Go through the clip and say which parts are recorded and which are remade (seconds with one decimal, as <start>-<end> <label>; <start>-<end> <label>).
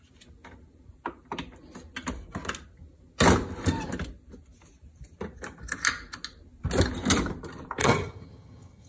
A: 0.0-7.8 recorded; 7.8-8.9 remade